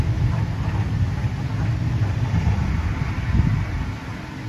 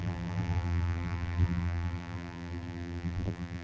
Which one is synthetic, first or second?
second